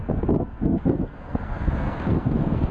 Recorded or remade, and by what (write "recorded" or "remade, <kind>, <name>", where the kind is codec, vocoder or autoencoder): remade, codec, SNAC